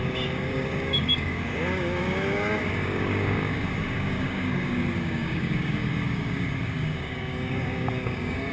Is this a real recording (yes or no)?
no